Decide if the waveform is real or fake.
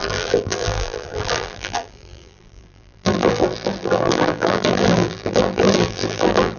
fake